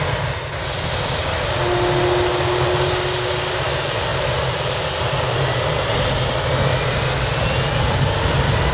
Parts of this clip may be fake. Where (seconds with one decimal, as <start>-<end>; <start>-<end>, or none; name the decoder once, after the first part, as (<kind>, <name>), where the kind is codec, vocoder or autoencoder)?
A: none